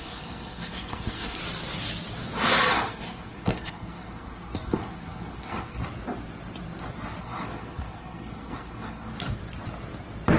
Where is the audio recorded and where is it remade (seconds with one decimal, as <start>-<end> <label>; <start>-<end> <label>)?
0.0-1.4 remade; 1.4-2.6 recorded; 2.6-5.8 remade; 5.8-7.2 recorded; 7.2-9.1 remade; 9.1-10.4 recorded